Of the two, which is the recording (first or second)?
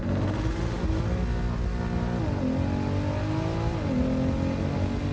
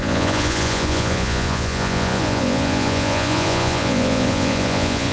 first